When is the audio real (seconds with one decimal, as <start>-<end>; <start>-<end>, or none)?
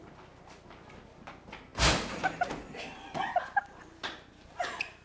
0.0-5.0